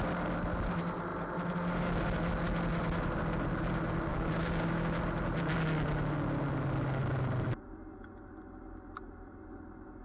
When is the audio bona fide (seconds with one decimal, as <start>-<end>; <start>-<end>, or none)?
0.0-4.1; 5.0-10.0